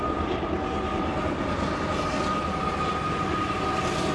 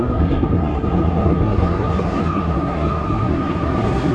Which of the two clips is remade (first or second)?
second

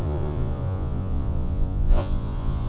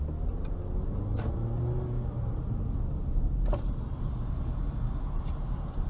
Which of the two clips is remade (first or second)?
first